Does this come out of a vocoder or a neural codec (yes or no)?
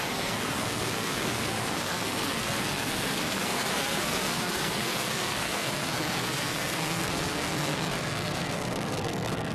yes